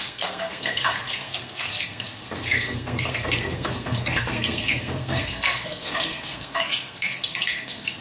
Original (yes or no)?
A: no